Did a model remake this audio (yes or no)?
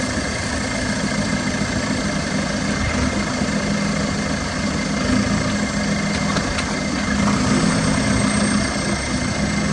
no